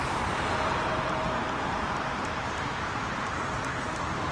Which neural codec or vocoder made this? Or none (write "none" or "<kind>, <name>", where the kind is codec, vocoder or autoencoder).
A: vocoder, BigVGAN v2